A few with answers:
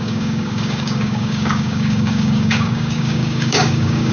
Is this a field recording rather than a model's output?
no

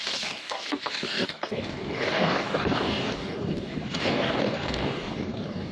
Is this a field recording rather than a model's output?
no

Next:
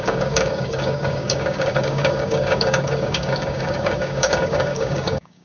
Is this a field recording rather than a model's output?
no